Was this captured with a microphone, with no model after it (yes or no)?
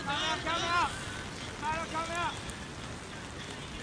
yes